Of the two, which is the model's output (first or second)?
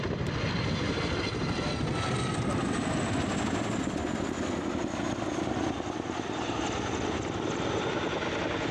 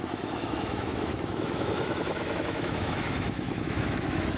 second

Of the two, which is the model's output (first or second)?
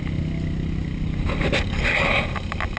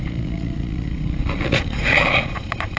second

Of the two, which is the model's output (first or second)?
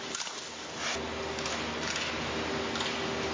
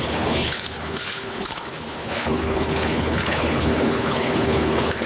second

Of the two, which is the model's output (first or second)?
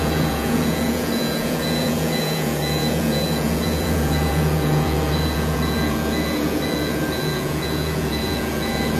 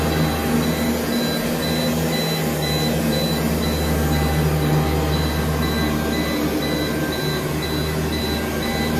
first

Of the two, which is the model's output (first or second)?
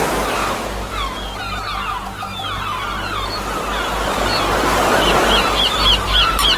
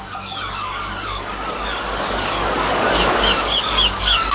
second